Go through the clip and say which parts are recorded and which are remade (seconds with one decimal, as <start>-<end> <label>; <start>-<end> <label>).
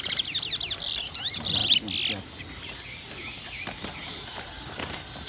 0.0-5.3 recorded